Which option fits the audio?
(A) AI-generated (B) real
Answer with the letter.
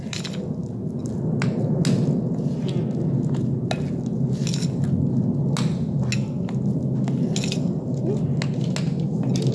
B